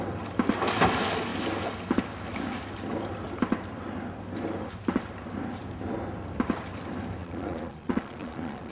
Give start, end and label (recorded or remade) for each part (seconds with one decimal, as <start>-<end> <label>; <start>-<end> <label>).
0.0-7.2 recorded; 7.2-8.7 remade